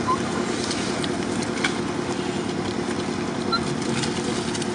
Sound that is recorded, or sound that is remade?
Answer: recorded